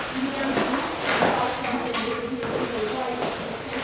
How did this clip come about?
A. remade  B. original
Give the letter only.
B